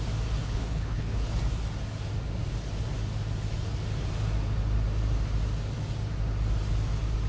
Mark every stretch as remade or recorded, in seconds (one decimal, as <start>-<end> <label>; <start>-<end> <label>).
0.0-0.4 recorded; 0.4-1.4 remade; 1.4-7.3 recorded